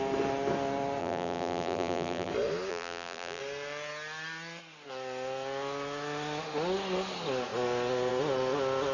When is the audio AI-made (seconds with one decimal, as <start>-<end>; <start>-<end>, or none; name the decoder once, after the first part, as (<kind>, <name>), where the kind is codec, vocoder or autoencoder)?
1.0-2.3 (vocoder, BigVGAN v2); 2.7-3.4